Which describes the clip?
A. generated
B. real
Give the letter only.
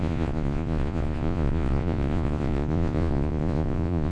A